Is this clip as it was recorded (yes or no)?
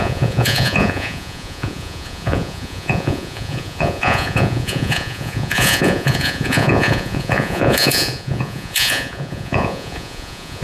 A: no